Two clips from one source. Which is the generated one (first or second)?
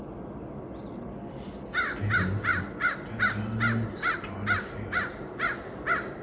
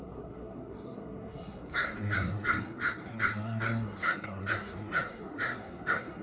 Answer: second